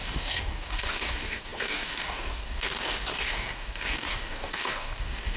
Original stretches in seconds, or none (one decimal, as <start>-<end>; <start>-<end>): none